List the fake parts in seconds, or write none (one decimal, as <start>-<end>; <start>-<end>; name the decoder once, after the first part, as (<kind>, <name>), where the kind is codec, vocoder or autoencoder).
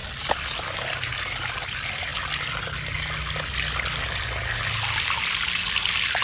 none